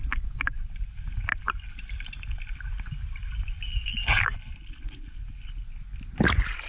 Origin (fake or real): real